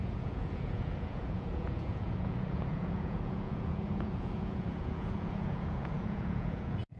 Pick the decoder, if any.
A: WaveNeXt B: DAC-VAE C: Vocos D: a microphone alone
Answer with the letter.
C